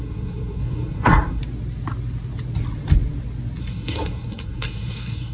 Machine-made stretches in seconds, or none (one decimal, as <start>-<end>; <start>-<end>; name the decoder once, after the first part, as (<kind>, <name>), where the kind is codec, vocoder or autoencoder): 0.0-1.4 (codec, SNAC); 3.6-5.3